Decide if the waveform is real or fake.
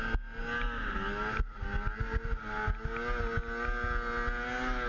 real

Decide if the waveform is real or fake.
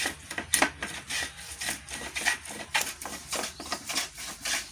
real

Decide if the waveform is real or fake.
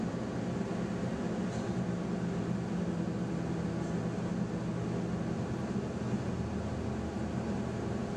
real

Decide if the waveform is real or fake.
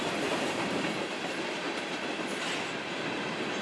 fake